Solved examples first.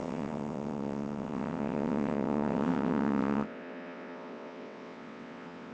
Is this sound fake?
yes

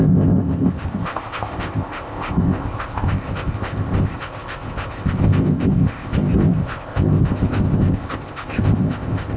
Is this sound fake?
yes